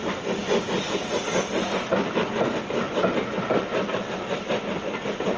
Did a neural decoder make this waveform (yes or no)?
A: no